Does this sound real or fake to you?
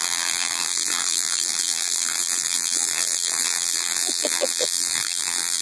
fake